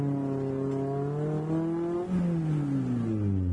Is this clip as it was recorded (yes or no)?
yes